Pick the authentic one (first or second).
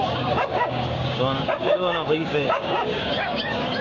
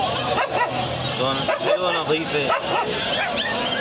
second